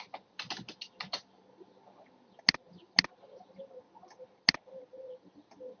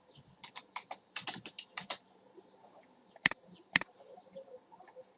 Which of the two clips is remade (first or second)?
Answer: second